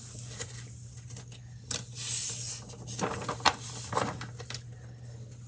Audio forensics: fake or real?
real